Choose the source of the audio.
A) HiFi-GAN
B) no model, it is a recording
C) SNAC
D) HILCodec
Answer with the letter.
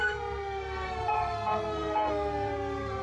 C